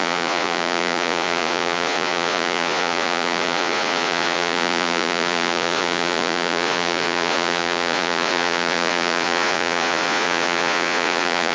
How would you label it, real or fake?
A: fake